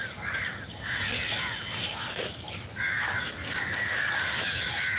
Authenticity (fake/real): real